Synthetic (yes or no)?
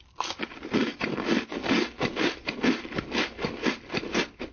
no